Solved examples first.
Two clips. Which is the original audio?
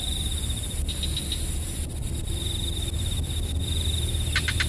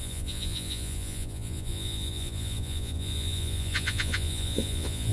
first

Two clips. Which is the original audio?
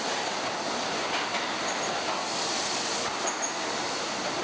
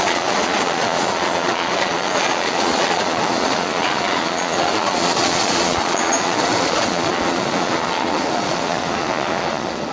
first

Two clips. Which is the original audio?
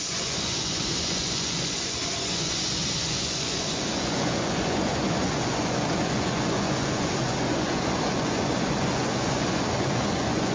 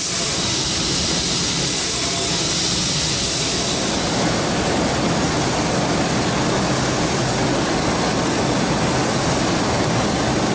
second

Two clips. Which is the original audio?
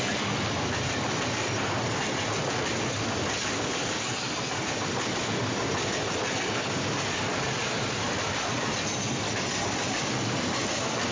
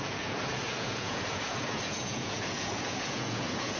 first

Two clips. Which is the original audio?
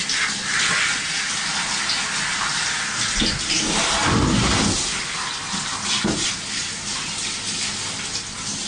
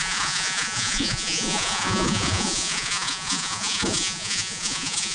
first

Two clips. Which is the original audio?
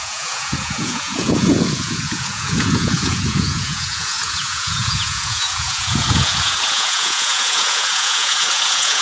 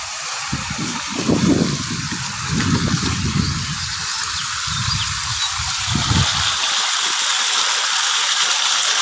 second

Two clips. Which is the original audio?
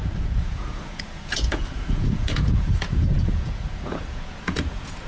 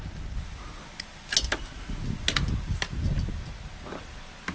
second